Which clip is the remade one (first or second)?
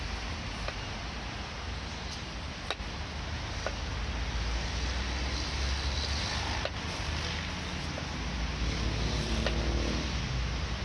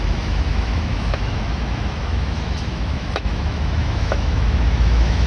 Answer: second